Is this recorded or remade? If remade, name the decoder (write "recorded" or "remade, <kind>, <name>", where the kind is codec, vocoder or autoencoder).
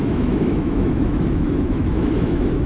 remade, autoencoder, DAC-VAE